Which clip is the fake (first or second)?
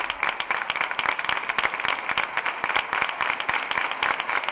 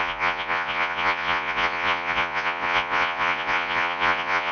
second